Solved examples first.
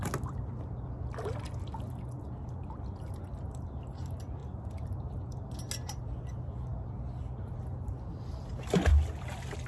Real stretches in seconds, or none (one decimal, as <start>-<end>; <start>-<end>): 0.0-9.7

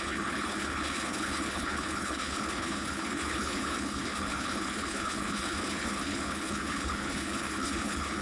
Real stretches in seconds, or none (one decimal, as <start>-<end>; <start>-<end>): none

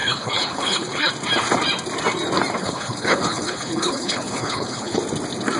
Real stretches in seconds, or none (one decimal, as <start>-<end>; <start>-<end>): 1.1-2.6; 5.0-5.6